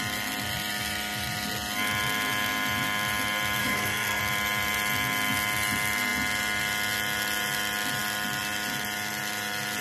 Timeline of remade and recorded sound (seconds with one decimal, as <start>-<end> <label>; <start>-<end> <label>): 0.0-3.6 recorded; 3.6-4.2 remade; 4.2-9.8 recorded